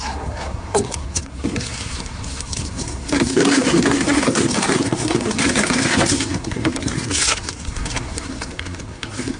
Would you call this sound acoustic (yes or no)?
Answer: no